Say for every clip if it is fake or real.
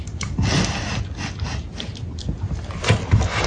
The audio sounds real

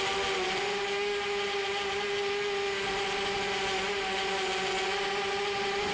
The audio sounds real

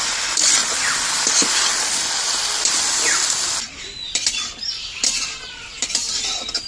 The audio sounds fake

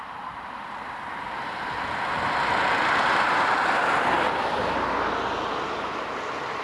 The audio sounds real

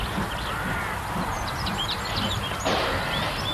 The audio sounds real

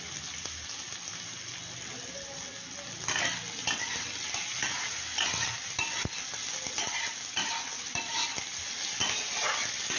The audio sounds real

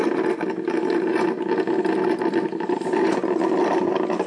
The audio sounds real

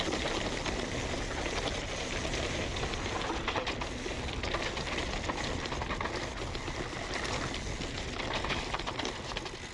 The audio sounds real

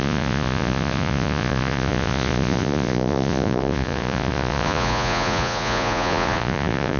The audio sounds fake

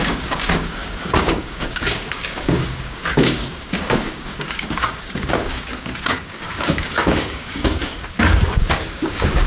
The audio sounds fake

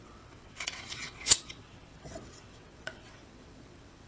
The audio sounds fake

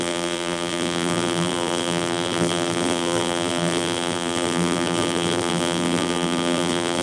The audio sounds fake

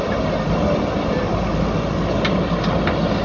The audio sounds real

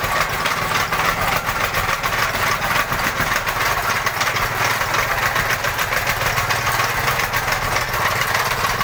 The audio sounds real